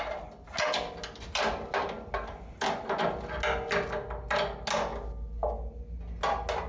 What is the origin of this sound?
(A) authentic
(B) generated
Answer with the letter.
A